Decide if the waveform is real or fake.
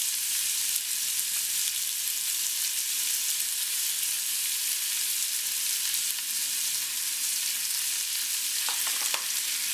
real